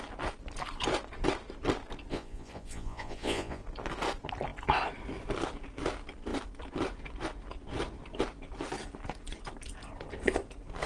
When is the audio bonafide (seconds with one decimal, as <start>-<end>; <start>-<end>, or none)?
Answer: 0.0-2.1; 3.6-10.9